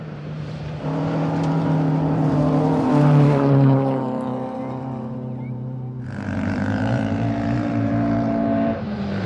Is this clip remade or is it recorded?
remade